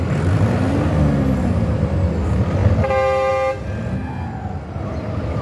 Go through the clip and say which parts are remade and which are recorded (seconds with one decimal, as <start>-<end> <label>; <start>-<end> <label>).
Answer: 0.0-5.4 recorded